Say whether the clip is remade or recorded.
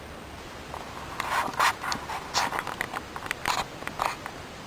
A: recorded